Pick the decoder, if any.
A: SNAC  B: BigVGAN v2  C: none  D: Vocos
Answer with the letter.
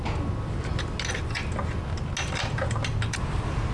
C